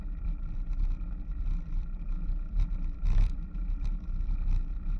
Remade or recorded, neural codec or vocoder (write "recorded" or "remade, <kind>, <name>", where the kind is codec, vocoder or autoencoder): remade, vocoder, BigVGAN v2